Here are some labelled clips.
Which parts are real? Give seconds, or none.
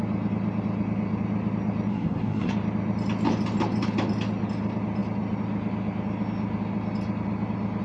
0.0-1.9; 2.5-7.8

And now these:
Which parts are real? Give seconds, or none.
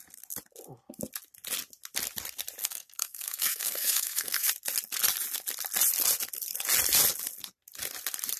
0.0-2.6; 4.5-8.4